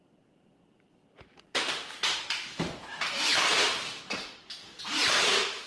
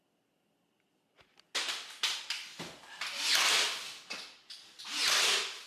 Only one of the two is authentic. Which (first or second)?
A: second